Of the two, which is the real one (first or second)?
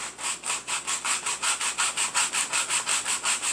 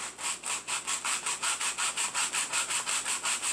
first